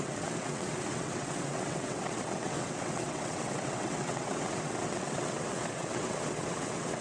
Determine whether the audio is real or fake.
fake